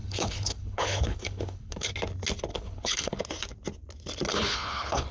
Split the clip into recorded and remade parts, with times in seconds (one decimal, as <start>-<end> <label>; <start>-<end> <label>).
0.0-1.9 remade; 1.9-2.5 recorded; 2.5-3.2 remade; 3.2-4.3 recorded; 4.3-5.1 remade